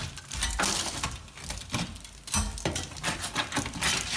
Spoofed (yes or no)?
no